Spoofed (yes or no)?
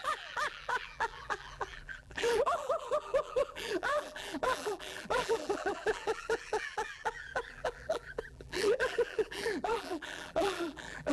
yes